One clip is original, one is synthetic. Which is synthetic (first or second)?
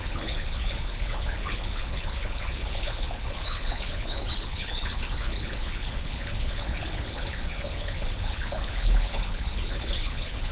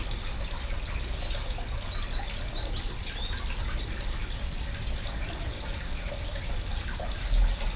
first